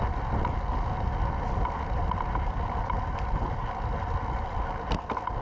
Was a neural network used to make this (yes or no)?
no